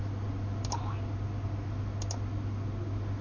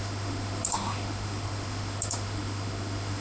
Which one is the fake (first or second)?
second